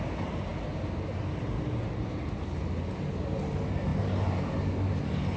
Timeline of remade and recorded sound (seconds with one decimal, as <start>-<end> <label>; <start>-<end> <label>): 0.0-3.9 recorded; 3.9-4.7 remade; 4.7-5.4 recorded